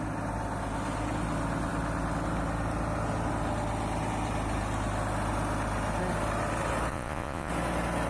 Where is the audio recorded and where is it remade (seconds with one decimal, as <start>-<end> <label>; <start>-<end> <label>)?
0.0-6.9 recorded; 6.9-7.5 remade; 7.5-8.1 recorded